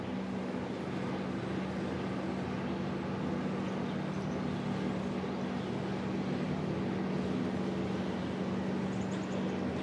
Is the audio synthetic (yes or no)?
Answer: no